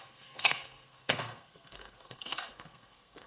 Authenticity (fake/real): fake